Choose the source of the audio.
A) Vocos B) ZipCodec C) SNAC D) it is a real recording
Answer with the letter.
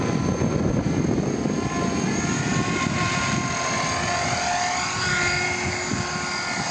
D